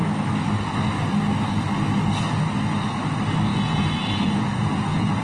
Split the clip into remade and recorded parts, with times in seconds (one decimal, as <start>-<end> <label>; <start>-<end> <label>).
0.0-3.5 recorded; 3.5-5.2 remade